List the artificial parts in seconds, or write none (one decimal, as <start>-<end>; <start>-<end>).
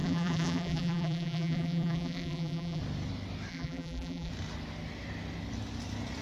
0.0-2.8; 3.5-4.3